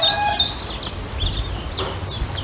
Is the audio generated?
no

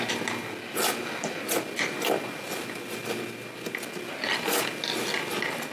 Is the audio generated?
no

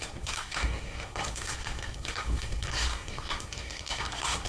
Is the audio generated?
yes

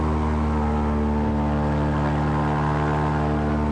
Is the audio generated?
no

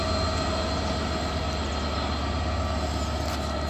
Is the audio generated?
no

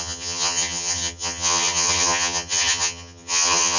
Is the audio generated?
yes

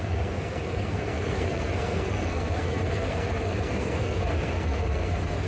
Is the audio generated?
yes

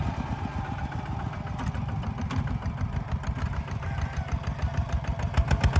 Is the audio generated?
no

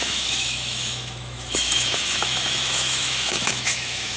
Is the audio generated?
yes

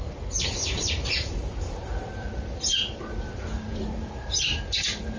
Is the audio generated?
yes